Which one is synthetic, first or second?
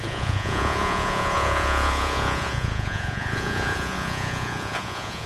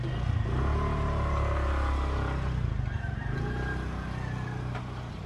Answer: first